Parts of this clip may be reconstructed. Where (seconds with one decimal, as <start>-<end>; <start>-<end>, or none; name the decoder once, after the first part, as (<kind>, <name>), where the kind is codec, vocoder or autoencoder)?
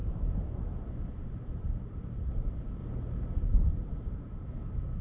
0.0-2.8 (vocoder, BigVGAN v2); 3.4-5.0